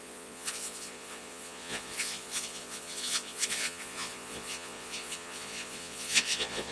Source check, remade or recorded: remade